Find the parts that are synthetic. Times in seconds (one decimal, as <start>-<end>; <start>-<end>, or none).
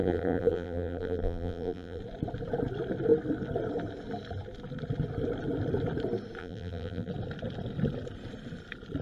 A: 0.0-2.0; 6.4-7.1